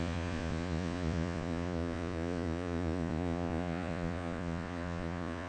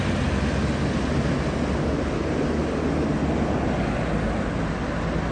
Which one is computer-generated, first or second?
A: first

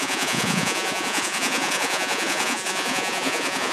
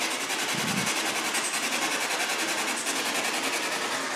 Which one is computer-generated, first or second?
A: first